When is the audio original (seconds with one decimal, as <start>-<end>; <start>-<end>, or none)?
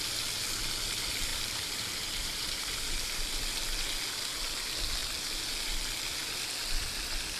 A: 0.0-1.3; 3.3-7.4